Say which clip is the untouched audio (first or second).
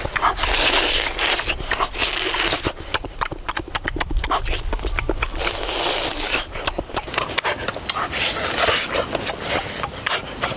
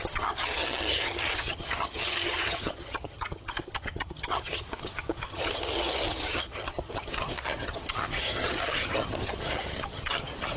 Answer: first